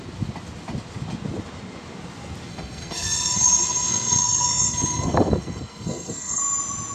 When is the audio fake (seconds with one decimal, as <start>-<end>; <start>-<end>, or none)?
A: 2.5-6.4

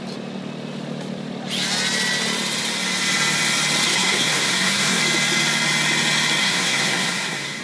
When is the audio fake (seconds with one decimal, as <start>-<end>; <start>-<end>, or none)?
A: 3.9-5.0; 6.4-7.6

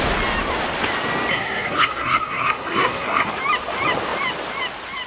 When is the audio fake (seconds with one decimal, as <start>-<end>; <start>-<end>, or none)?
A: 1.3-3.3

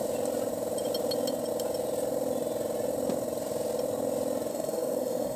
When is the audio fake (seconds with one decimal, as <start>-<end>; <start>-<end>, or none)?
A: 4.5-5.4